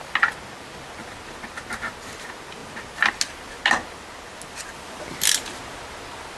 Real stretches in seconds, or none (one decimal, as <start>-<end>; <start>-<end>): 0.0-6.4